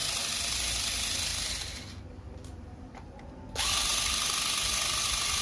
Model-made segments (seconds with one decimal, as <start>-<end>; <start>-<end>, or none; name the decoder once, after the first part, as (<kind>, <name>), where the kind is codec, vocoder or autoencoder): 1.3-3.2 (vocoder, BigVGAN v2); 3.9-5.4